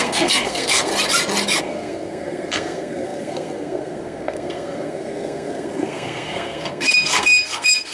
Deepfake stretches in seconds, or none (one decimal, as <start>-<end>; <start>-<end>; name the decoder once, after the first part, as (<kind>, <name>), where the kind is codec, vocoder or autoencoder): 0.0-0.9 (codec, SNAC); 1.6-7.9